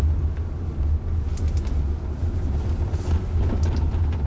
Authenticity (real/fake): real